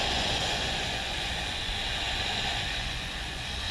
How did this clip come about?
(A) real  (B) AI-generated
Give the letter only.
B